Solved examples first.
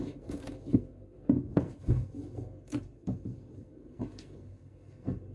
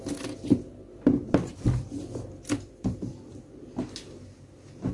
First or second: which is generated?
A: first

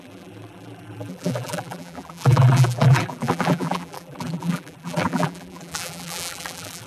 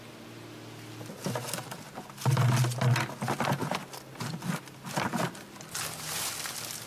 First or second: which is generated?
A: first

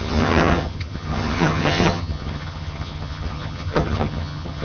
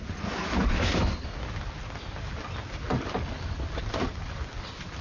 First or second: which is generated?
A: first